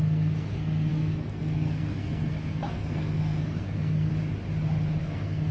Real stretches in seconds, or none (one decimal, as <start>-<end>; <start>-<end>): 4.1-5.0